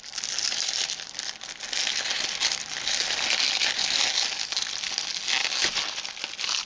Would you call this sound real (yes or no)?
yes